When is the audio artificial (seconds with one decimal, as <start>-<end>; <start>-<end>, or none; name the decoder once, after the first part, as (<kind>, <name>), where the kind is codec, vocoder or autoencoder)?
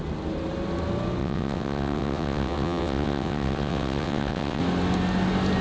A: 1.2-4.6 (vocoder, WaveNeXt)